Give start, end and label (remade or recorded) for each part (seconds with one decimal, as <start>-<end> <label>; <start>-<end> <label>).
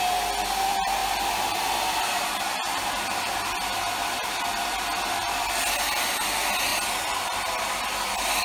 0.0-8.4 recorded